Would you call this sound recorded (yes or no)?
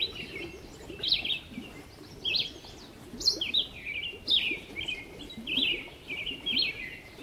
yes